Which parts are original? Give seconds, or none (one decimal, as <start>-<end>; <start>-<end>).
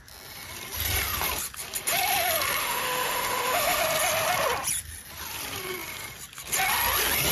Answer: 0.0-2.6; 3.8-7.3